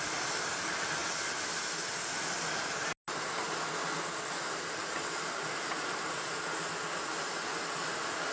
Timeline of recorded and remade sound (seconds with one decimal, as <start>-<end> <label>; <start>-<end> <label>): 0.0-8.3 recorded